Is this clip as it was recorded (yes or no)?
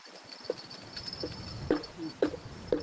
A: yes